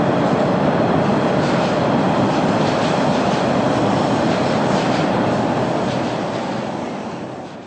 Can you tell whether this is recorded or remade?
recorded